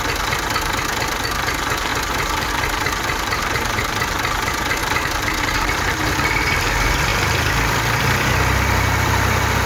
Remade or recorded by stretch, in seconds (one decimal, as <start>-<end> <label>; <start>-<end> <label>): 0.0-9.7 remade